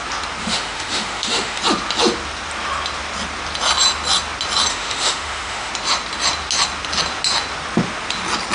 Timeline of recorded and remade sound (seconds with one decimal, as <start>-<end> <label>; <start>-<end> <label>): 0.0-0.4 recorded; 0.4-1.6 remade; 1.6-4.7 recorded; 4.7-5.7 remade; 5.7-8.5 recorded